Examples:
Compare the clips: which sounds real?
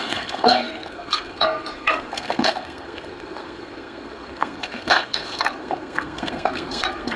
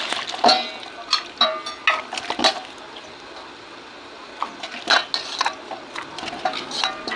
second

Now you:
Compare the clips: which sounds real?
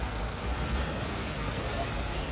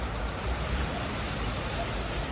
second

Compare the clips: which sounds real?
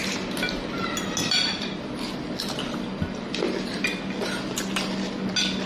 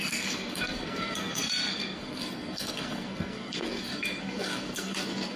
first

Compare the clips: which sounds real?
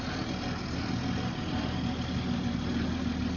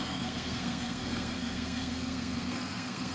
first